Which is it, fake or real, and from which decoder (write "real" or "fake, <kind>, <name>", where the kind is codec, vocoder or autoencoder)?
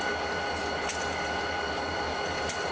real